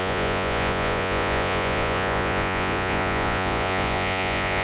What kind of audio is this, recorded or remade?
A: remade